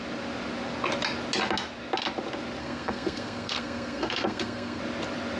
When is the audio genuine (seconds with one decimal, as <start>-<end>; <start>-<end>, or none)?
0.0-2.6; 4.8-5.4